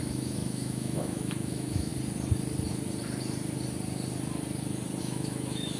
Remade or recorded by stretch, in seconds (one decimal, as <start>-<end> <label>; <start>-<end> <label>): 0.0-1.9 remade; 1.9-5.0 recorded; 5.0-5.8 remade